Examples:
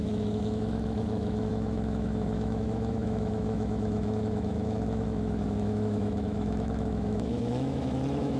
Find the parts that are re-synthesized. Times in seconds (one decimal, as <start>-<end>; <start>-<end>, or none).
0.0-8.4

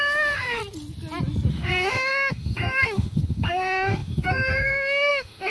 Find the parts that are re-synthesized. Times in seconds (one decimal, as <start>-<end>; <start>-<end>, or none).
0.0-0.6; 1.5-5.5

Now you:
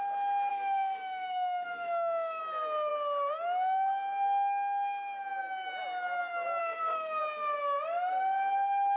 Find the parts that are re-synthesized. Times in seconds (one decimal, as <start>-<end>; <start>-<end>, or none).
0.5-2.4; 6.6-7.2

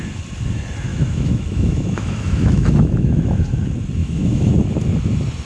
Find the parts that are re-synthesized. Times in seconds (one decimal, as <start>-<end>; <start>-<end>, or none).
0.9-3.4; 4.0-4.5